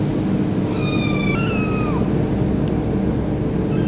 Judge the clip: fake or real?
real